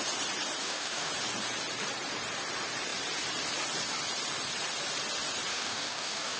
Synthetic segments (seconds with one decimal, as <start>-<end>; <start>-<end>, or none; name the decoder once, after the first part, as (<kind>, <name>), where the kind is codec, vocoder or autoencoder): 0.6-1.1 (codec, DAC); 5.5-6.4